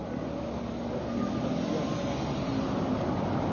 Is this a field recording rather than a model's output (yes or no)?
yes